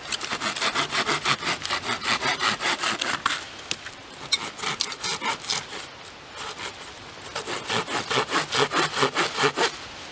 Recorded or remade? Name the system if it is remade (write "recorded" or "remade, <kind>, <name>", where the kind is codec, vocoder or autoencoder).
recorded